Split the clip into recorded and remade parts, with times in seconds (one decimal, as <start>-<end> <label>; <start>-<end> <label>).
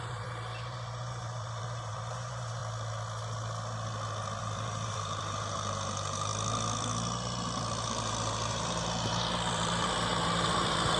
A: 0.0-2.6 remade; 2.6-4.4 recorded; 4.4-6.3 remade; 6.3-7.8 recorded; 7.8-11.0 remade